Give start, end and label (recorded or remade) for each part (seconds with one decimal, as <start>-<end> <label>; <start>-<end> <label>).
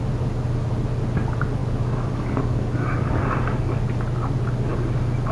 0.0-1.6 recorded; 1.6-3.1 remade; 3.1-5.3 recorded